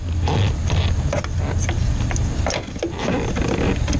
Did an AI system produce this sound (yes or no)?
no